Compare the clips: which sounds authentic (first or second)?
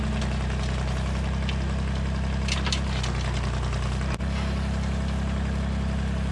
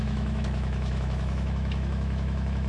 first